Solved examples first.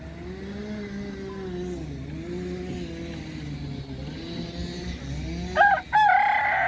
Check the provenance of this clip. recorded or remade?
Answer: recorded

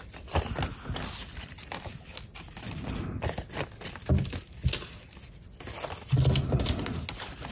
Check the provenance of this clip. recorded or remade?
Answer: recorded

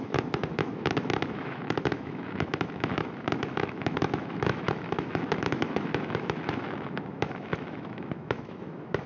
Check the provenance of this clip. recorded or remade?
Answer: remade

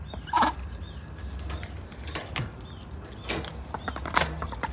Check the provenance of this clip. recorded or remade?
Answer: recorded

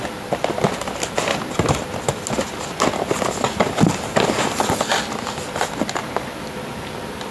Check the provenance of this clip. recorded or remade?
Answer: recorded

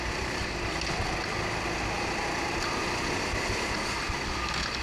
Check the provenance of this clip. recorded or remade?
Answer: recorded